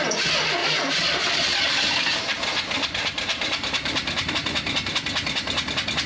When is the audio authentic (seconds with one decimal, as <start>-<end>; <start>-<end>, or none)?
0.0-0.6; 4.3-6.1